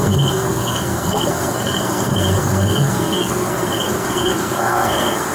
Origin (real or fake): fake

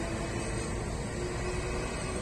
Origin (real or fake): real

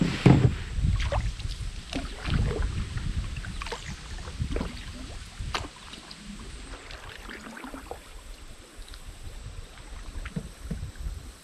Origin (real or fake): real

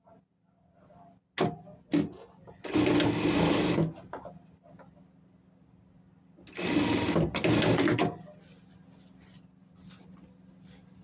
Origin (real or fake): real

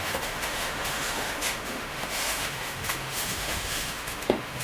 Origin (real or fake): fake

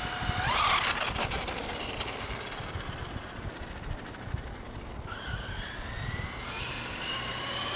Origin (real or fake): real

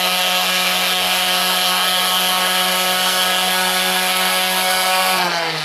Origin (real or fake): fake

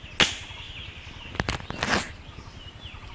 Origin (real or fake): real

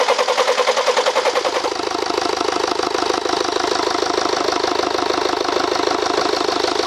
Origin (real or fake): real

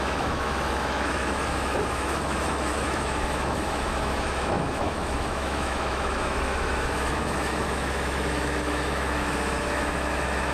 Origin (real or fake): fake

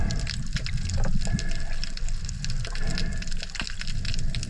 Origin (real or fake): real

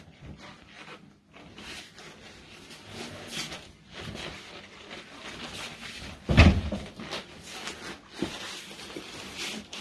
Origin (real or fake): real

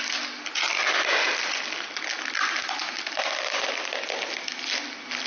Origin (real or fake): real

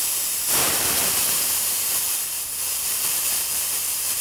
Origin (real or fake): fake